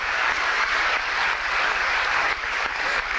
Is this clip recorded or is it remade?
remade